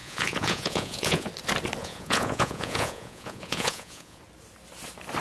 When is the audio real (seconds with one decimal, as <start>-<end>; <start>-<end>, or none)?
1.3-1.8; 4.2-5.2